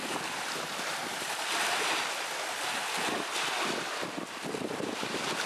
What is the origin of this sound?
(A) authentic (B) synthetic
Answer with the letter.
A